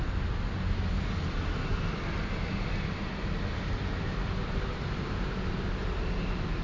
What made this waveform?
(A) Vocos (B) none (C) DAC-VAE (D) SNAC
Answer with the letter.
B